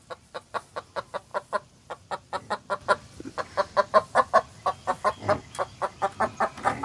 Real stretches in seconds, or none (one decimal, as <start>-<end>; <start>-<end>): 0.0-6.8